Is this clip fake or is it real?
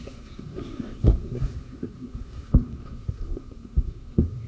fake